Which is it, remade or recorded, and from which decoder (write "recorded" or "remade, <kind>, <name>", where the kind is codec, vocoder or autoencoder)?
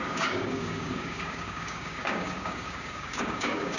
remade, codec, DAC